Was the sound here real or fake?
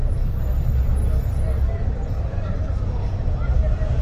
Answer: real